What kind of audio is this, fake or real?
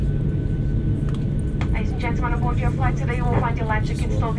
real